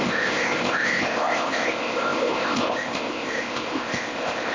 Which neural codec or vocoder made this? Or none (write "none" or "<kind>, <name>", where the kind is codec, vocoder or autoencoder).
codec, ZipCodec